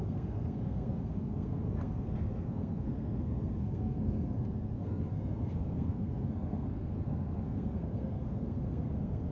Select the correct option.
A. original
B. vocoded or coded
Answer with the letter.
B